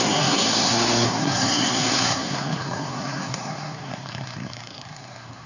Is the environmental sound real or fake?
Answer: fake